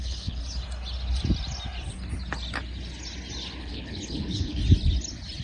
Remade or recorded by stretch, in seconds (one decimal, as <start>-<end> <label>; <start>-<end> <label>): 0.0-0.4 remade; 0.4-3.6 recorded; 3.6-4.6 remade; 4.6-5.4 recorded

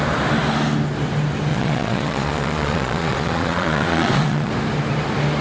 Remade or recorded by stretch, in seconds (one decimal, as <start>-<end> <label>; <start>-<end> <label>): 0.0-1.5 recorded; 1.5-4.5 remade; 4.5-5.4 recorded

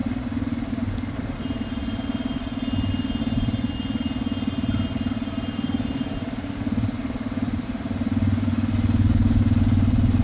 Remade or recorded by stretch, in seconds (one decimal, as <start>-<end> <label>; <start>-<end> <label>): 0.0-10.2 recorded

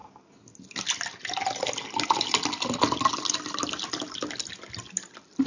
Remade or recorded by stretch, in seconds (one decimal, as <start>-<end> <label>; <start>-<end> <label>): 0.0-5.5 recorded

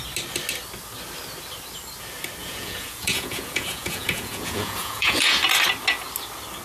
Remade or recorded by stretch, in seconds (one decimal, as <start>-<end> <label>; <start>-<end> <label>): 0.0-2.4 recorded; 2.4-5.4 remade; 5.4-6.6 recorded

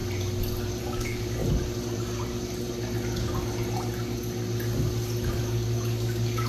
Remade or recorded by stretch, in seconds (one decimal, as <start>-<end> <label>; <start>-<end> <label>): 0.0-0.8 recorded; 0.8-1.4 remade; 1.4-5.3 recorded; 5.3-6.5 remade

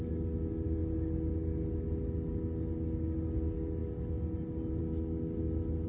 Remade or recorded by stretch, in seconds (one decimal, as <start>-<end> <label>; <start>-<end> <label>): 0.0-5.9 recorded